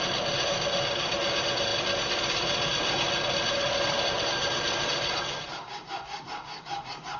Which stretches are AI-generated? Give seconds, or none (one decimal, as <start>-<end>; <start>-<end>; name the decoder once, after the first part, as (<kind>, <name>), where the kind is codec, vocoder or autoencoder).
5.6-7.2 (codec, DAC)